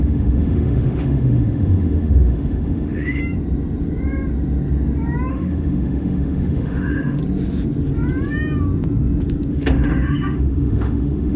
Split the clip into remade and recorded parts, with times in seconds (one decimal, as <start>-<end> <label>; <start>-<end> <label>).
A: 0.0-3.2 remade; 3.2-5.3 recorded; 5.3-7.2 remade; 7.2-9.5 recorded; 9.5-11.4 remade